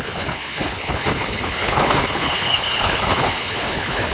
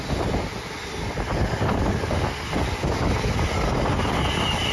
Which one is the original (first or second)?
second